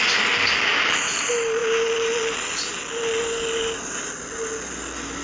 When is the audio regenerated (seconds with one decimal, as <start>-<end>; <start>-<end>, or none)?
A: none